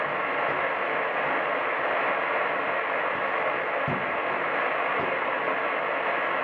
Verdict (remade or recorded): recorded